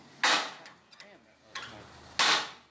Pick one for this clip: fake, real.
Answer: real